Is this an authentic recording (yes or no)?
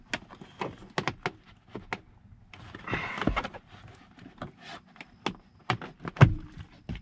yes